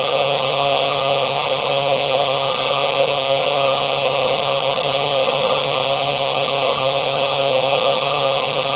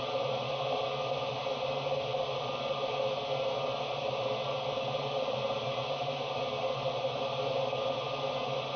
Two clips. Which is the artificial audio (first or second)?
first